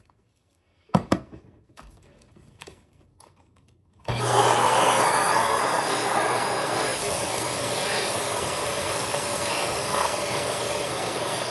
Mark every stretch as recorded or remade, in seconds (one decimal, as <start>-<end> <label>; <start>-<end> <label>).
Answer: 0.0-11.5 remade